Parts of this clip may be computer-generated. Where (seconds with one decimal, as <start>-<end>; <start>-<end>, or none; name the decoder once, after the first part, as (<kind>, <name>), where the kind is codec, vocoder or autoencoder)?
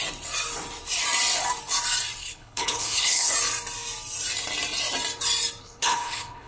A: 2.2-3.3 (codec, HILCodec); 5.6-6.5